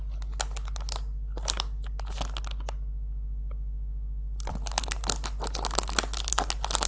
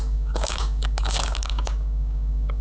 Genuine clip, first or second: first